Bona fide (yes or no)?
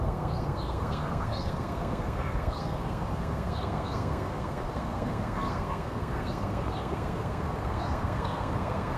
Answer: no